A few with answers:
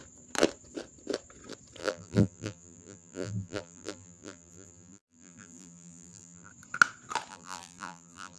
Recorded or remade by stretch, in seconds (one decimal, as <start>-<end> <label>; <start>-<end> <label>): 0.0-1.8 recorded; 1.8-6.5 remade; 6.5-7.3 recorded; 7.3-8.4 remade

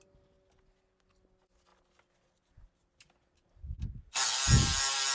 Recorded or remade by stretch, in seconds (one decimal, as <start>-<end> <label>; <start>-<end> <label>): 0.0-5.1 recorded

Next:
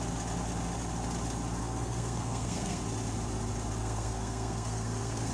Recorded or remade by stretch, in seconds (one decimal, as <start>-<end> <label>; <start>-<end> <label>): 0.0-1.6 recorded; 1.6-2.8 remade; 2.8-3.8 recorded; 3.8-5.3 remade

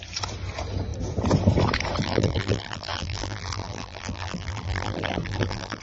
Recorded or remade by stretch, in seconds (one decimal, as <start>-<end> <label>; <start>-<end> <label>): 0.0-2.0 recorded; 2.0-5.8 remade

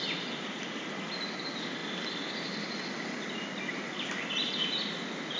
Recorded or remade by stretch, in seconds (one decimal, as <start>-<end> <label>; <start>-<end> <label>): 0.0-5.4 recorded

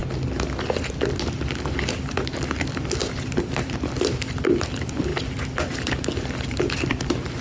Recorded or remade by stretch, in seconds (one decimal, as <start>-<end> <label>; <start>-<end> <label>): 0.0-2.1 recorded; 2.1-5.1 remade; 5.1-6.1 recorded; 6.1-7.4 remade

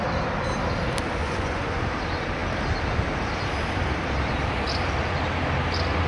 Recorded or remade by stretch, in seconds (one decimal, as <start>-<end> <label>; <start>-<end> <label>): 0.0-1.2 recorded; 1.2-1.8 remade; 1.8-6.1 recorded